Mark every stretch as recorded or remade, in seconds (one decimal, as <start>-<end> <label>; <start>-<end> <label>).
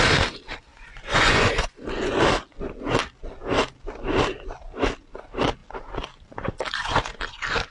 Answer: 0.0-0.7 recorded; 0.7-2.2 remade; 2.2-7.7 recorded